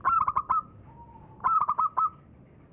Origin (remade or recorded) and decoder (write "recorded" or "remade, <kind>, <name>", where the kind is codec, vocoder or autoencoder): recorded